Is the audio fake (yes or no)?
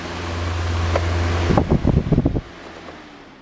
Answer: no